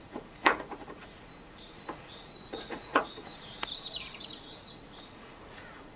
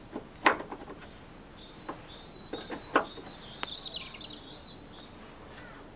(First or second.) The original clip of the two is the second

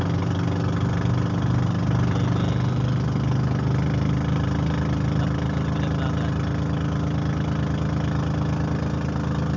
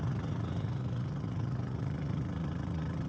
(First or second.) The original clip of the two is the first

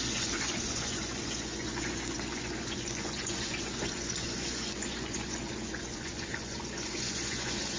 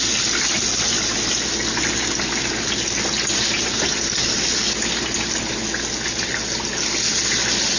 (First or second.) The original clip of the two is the second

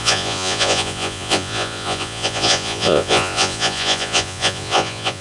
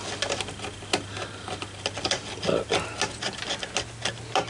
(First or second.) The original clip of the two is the second